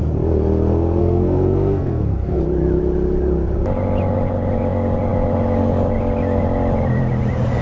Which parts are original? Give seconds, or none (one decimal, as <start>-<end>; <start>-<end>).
0.0-1.0; 2.4-7.6